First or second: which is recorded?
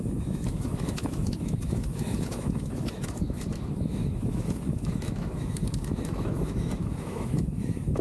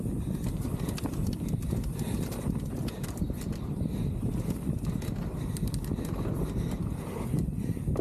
second